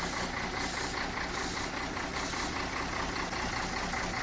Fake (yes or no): no